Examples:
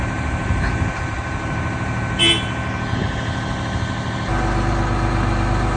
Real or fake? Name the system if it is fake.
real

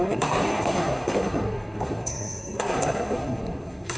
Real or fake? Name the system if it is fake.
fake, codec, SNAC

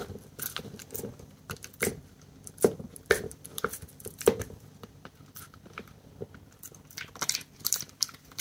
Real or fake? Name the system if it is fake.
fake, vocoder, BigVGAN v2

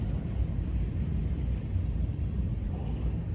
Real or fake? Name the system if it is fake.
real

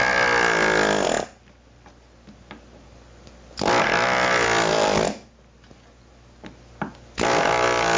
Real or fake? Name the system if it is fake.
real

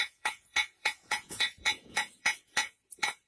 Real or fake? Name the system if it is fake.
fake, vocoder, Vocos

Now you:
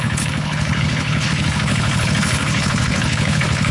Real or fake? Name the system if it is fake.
fake, codec, HILCodec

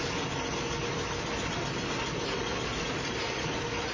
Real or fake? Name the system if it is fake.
real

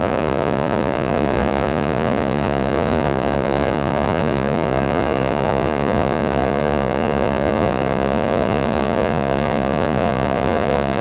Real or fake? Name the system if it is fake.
fake, vocoder, Vocos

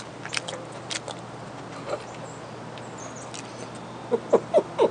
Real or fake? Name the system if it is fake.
real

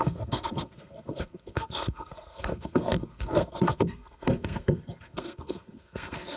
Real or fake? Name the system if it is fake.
fake, codec, SNAC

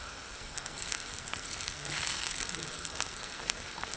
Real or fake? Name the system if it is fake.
fake, codec, SNAC